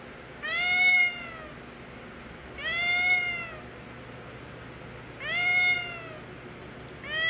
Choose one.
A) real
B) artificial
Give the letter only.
A